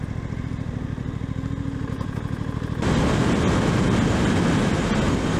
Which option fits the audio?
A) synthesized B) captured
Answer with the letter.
B